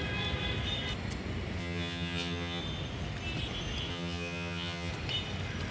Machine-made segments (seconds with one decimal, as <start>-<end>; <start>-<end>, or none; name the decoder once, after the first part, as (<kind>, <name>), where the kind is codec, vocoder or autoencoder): 1.6-2.6 (vocoder, HiFi-GAN); 3.9-4.9